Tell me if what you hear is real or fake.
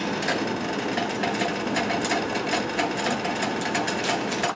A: real